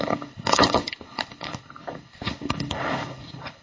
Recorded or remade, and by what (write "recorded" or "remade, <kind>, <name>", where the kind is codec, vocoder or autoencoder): remade, codec, HILCodec